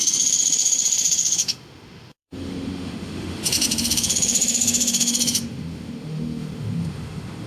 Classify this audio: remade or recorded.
remade